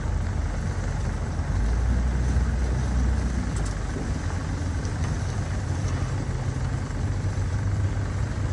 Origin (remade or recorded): recorded